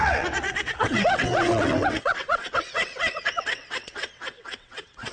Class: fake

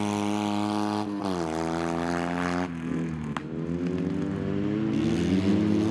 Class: real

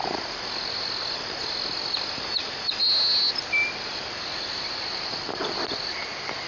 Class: real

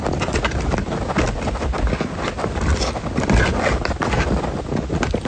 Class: real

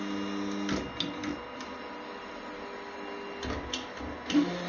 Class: real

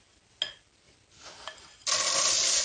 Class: real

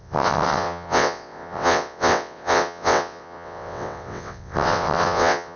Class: fake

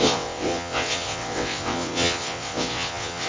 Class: fake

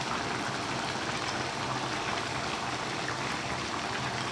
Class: real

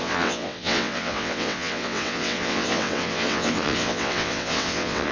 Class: fake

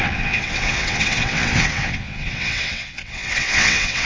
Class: fake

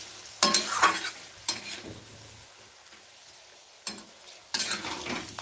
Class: real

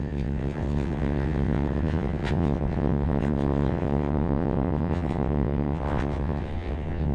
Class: fake